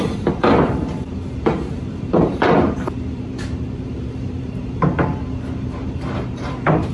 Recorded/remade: remade